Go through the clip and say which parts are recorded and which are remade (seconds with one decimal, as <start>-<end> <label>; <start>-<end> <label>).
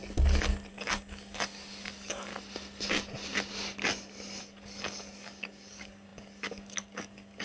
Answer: 0.0-0.7 recorded; 0.7-2.3 remade; 2.3-4.4 recorded; 4.4-7.4 remade